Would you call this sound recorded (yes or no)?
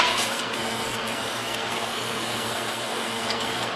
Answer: no